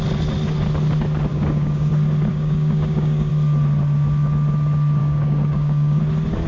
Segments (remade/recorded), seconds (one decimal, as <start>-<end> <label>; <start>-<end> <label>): 0.0-1.3 recorded; 1.3-1.9 remade; 1.9-2.3 recorded; 2.3-3.3 remade; 3.3-5.0 recorded; 5.0-6.0 remade; 6.0-6.5 recorded